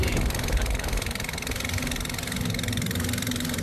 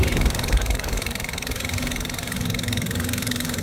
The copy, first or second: second